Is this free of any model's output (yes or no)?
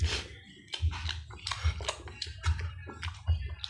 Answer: yes